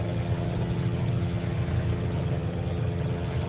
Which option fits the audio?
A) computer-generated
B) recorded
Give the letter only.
A